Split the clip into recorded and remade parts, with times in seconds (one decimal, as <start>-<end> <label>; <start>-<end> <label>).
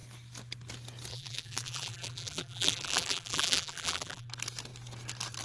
0.0-1.1 recorded; 1.1-4.3 remade; 4.3-5.4 recorded